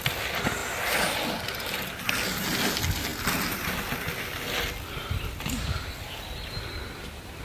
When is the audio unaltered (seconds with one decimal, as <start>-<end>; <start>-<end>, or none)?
0.0-7.4